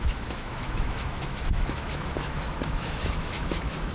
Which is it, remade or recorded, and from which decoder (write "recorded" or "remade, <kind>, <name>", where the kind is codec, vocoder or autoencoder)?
remade, autoencoder, DAC-VAE